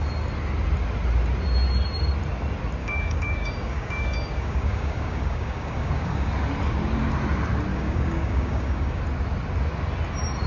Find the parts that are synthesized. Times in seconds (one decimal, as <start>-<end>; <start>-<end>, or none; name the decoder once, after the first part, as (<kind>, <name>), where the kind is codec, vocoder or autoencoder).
2.8-6.3 (codec, DAC); 7.7-9.0